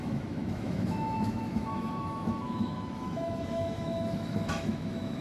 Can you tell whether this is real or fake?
fake